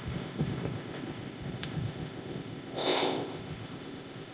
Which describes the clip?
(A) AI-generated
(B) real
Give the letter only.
A